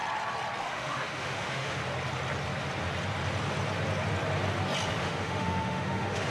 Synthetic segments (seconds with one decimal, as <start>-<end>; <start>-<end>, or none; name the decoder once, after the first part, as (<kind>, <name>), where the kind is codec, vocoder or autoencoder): 0.6-1.8 (autoencoder, DAC-VAE); 5.0-6.3